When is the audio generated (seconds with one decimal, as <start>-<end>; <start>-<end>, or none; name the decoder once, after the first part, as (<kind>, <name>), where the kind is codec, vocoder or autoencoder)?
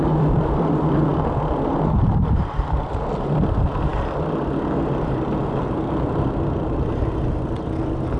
0.0-1.1 (vocoder, BigVGAN v2); 2.1-3.9